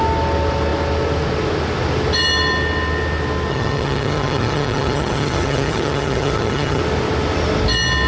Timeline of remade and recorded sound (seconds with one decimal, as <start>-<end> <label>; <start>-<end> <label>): 0.0-3.5 recorded; 3.5-6.8 remade; 6.8-8.1 recorded